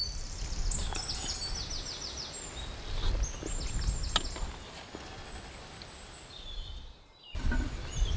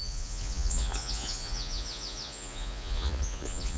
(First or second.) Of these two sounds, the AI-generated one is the second